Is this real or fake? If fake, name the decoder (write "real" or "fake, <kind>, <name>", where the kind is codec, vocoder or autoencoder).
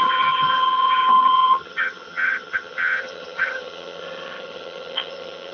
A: fake, vocoder, HiFi-GAN